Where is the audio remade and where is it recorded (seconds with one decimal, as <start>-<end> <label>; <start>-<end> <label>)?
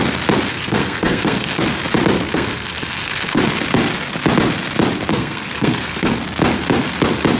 0.0-0.5 recorded; 0.5-1.6 remade; 1.6-2.3 recorded; 2.3-3.4 remade; 3.4-5.1 recorded; 5.1-6.2 remade; 6.2-7.4 recorded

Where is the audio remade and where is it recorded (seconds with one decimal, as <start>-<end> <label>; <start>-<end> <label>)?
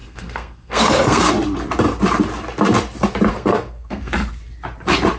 0.0-1.3 remade; 1.3-3.3 recorded; 3.3-4.4 remade; 4.4-5.2 recorded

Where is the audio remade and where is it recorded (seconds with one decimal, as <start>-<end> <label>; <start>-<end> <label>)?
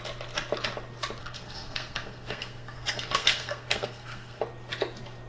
0.0-1.2 recorded; 1.2-4.4 remade; 4.4-5.3 recorded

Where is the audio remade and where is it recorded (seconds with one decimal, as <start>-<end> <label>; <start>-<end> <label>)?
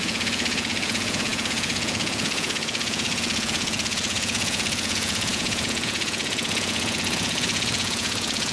0.0-8.5 remade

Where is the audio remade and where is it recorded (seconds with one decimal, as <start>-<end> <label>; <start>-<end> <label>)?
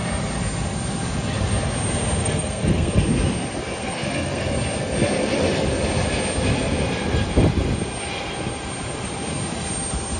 0.0-2.2 recorded; 2.2-2.9 remade; 2.9-3.8 recorded; 3.8-4.4 remade; 4.4-10.2 recorded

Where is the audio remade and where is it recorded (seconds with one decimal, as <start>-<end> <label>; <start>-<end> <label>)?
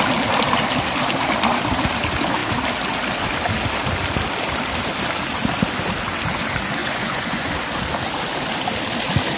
0.0-6.8 recorded; 6.8-7.5 remade; 7.5-9.4 recorded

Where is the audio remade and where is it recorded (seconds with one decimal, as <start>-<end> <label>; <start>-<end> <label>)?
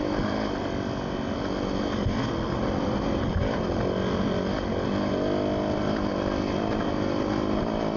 0.0-6.1 recorded; 6.1-8.0 remade